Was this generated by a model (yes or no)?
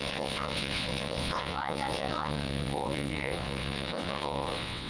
yes